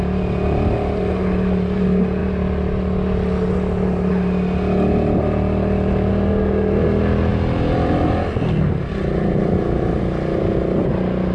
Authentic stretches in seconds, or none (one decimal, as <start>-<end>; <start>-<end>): 0.0-7.3; 10.0-11.3